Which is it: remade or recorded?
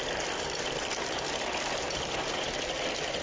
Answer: recorded